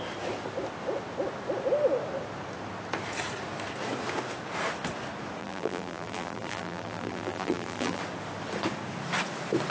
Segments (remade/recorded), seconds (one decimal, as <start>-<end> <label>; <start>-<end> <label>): 0.0-5.4 recorded; 5.4-8.0 remade; 8.0-9.7 recorded